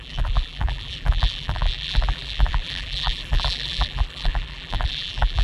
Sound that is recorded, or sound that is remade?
remade